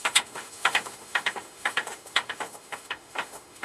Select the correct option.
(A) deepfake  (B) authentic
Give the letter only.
A